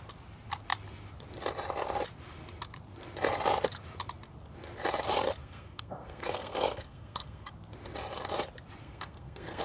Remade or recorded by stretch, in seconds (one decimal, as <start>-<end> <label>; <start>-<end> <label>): 0.0-5.4 recorded; 5.4-7.5 remade; 7.5-8.8 recorded; 8.8-9.6 remade